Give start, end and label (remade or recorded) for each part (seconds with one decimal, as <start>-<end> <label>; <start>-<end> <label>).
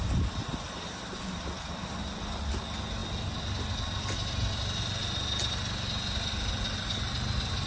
0.0-7.7 recorded